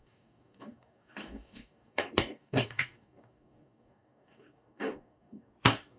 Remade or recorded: remade